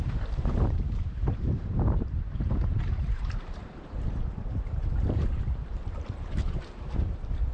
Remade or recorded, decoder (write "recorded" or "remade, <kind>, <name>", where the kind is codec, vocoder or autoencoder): remade, vocoder, BigVGAN v2